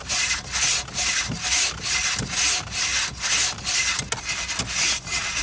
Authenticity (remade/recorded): recorded